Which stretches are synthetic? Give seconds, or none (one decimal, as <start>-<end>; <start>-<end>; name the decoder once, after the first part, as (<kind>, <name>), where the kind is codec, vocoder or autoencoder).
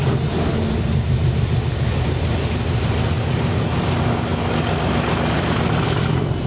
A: none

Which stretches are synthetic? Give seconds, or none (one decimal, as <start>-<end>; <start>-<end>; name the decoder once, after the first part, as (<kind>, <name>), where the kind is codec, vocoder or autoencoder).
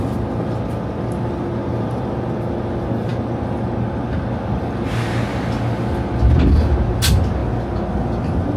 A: none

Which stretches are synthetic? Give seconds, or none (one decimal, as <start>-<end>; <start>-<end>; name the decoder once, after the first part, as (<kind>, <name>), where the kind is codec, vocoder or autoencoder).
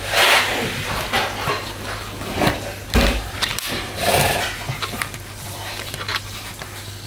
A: none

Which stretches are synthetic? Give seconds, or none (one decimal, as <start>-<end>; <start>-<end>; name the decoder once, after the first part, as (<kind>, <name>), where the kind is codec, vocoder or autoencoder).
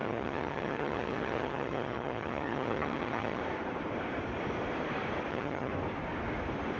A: 0.0-3.4 (vocoder, HiFi-GAN); 5.3-5.7